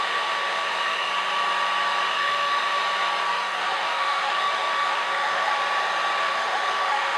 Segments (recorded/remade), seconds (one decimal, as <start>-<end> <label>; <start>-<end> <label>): 0.0-1.1 remade; 1.1-2.1 recorded; 2.1-2.8 remade; 2.8-3.6 recorded; 3.6-5.6 remade; 5.6-6.2 recorded; 6.2-7.2 remade